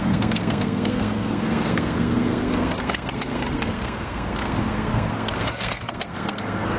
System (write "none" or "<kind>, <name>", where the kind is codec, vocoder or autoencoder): codec, SNAC